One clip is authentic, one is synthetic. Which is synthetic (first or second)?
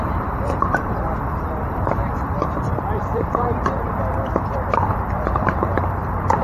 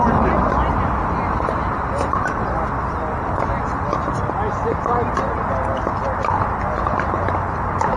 first